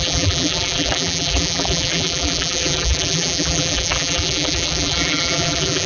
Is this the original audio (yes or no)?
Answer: no